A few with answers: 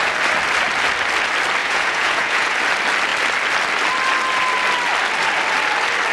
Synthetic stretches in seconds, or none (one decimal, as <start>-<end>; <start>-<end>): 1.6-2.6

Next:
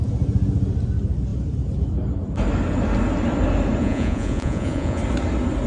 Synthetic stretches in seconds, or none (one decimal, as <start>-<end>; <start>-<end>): 3.8-5.0

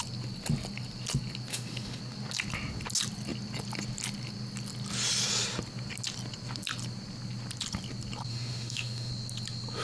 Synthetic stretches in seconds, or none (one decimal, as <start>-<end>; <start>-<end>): 1.5-2.0; 8.3-9.1

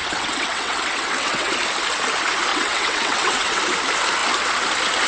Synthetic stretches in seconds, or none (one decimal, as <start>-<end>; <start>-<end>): 0.0-1.5; 2.5-3.6